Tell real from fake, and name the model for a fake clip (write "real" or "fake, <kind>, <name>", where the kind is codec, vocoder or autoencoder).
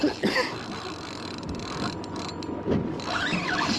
real